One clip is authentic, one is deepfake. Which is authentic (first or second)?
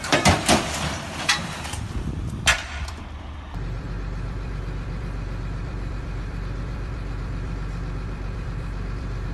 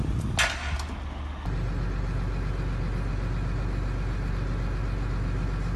second